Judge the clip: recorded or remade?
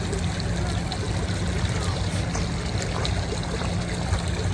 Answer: recorded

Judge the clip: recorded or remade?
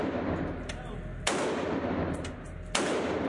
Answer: recorded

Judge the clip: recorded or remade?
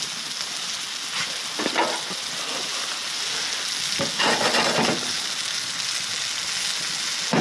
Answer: recorded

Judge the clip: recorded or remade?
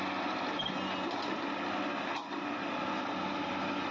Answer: recorded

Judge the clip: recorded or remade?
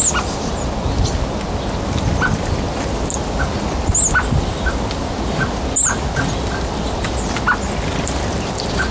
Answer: recorded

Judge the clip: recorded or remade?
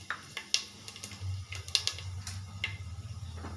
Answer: recorded